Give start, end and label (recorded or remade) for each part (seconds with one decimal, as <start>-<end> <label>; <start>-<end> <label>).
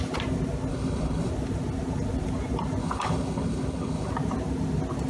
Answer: 0.0-0.7 recorded; 0.7-1.3 remade; 1.3-2.8 recorded; 2.8-4.1 remade; 4.1-5.1 recorded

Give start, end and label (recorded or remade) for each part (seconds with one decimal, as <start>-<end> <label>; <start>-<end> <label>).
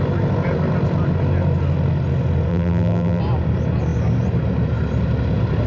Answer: 0.0-2.5 recorded; 2.5-3.2 remade; 3.2-5.7 recorded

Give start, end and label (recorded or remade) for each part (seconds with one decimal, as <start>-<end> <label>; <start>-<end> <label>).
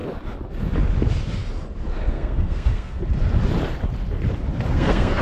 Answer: 0.0-2.1 recorded; 2.1-3.0 remade; 3.0-4.7 recorded; 4.7-5.2 remade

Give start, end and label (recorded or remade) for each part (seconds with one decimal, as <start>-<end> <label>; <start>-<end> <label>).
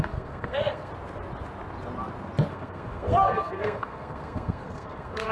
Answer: 0.0-0.9 remade; 0.9-2.5 recorded; 2.5-5.3 remade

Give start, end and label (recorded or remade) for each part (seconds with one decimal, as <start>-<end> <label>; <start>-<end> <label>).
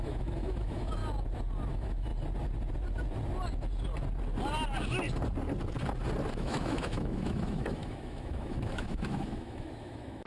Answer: 0.0-1.0 remade; 1.0-1.7 recorded; 1.7-2.1 remade; 2.1-6.3 recorded; 6.3-10.3 remade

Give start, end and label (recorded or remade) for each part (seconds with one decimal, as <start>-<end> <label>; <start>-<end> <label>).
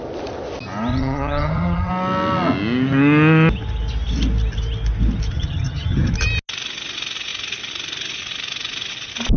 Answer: 0.0-0.9 recorded; 0.9-1.9 remade; 1.9-5.3 recorded; 5.3-6.1 remade; 6.1-9.4 recorded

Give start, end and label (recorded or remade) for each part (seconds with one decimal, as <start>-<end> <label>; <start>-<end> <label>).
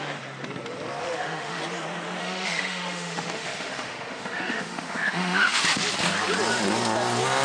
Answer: 0.0-1.0 recorded; 1.0-1.6 remade; 1.6-2.2 recorded; 2.2-5.6 remade; 5.6-7.4 recorded